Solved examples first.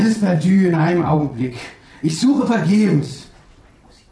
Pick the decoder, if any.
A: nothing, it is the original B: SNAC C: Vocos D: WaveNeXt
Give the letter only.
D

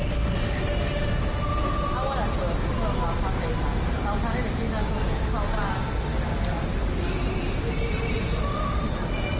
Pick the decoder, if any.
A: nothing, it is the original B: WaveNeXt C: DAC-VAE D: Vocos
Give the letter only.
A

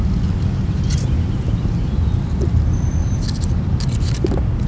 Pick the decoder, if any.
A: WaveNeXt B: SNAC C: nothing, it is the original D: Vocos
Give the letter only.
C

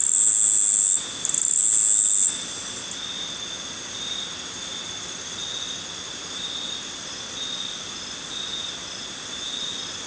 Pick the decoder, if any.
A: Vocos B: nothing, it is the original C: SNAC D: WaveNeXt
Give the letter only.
B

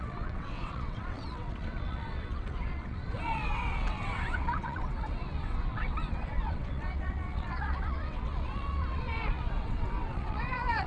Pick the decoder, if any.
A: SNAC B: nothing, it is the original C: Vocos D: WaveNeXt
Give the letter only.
D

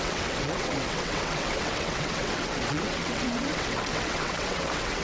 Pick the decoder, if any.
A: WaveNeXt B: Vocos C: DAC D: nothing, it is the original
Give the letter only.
A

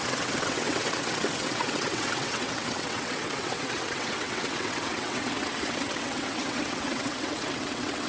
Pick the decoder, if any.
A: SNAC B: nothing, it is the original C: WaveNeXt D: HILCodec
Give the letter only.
C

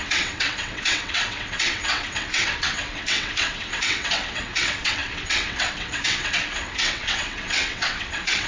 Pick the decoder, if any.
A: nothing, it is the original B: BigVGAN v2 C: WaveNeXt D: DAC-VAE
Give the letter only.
C